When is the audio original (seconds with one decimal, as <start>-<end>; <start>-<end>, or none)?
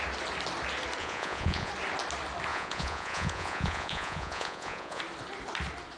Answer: 0.0-1.0; 1.7-2.5; 5.0-6.0